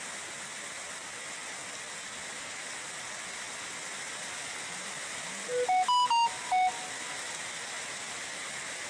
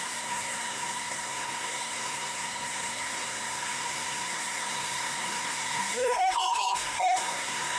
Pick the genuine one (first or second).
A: first